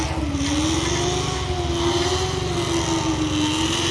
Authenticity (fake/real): real